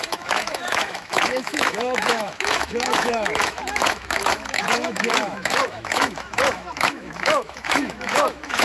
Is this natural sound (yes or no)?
no